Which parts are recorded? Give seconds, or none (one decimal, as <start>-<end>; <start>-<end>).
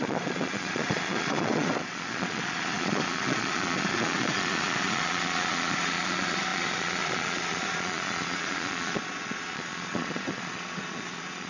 none